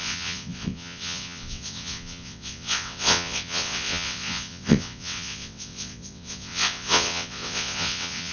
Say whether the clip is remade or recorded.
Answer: remade